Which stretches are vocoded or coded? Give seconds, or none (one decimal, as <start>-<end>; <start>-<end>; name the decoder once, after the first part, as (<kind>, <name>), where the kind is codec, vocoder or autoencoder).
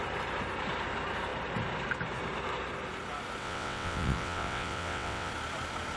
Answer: 3.4-5.3 (vocoder, WaveNeXt)